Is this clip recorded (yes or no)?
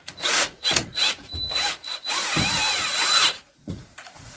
no